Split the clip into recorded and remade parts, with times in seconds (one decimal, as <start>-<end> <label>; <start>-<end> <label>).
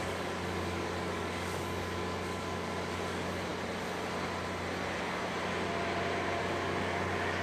0.0-3.5 remade; 3.5-6.4 recorded; 6.4-7.4 remade